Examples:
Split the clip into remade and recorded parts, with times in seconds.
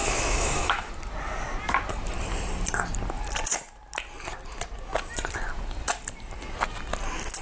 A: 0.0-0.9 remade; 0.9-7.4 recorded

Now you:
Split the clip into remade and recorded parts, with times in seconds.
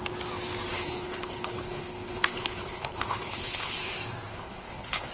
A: 0.0-0.7 recorded; 0.7-3.8 remade; 3.8-4.3 recorded; 4.3-5.1 remade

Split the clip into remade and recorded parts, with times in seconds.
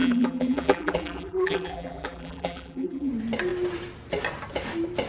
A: 0.0-3.1 remade; 3.1-5.1 recorded